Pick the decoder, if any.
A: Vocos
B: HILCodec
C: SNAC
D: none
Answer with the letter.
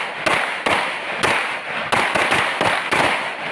D